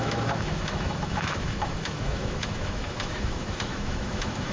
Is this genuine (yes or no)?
no